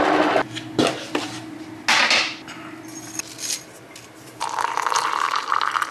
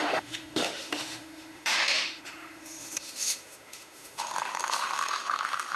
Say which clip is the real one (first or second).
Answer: first